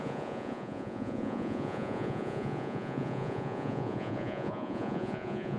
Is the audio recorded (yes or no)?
no